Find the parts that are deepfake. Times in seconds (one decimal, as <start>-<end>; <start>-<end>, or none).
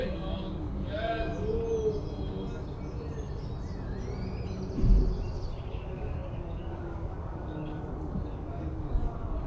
0.0-1.3; 5.7-9.5